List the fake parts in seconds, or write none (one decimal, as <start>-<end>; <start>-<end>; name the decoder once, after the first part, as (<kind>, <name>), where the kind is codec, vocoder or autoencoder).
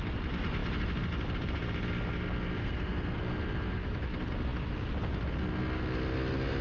2.6-3.2 (codec, SNAC)